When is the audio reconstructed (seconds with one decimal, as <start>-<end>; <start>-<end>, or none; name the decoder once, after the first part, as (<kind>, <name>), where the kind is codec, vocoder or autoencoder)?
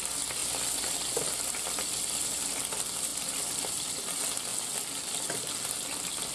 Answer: none